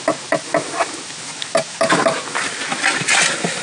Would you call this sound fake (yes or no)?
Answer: no